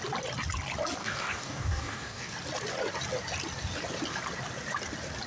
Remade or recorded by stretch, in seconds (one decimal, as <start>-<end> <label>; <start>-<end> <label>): 0.0-1.0 recorded; 1.0-2.3 remade; 2.3-5.3 recorded